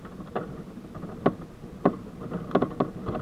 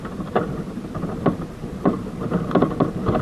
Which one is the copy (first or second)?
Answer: second